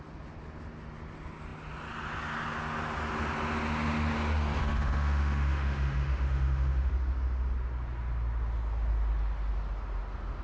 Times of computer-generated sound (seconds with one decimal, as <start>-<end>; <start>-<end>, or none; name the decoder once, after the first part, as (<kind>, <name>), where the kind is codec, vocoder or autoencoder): 4.6-6.9 (autoencoder, DAC-VAE)